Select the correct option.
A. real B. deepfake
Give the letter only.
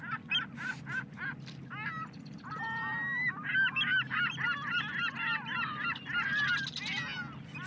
A